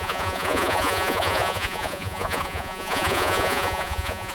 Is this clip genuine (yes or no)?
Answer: no